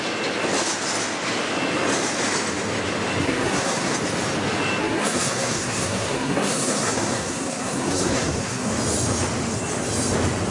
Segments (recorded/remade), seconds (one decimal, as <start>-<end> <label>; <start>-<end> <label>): 0.0-3.2 recorded; 3.2-3.9 remade; 3.9-4.8 recorded; 4.8-8.7 remade; 8.7-10.5 recorded